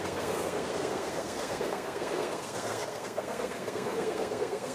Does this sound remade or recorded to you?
remade